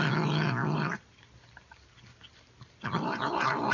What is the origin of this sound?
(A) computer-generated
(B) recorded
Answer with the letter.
B